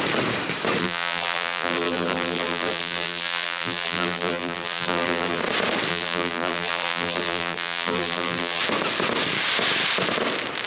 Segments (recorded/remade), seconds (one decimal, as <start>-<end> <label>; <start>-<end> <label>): 0.0-0.8 recorded; 0.8-5.4 remade; 5.4-5.9 recorded; 5.9-8.6 remade; 8.6-10.7 recorded